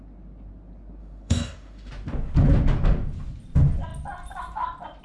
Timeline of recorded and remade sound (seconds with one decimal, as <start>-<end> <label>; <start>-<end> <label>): 0.0-1.0 recorded; 1.0-1.9 remade; 1.9-5.0 recorded